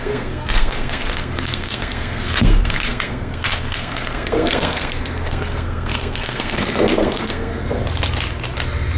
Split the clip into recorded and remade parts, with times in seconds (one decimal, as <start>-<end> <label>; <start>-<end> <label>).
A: 0.0-7.8 remade; 7.8-9.0 recorded